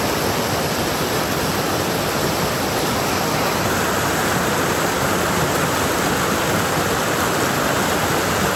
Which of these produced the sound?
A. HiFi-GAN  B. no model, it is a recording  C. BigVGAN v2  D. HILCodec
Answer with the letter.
B